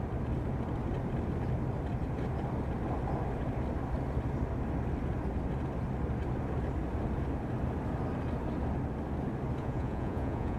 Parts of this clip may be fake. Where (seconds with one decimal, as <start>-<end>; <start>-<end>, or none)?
9.6-10.6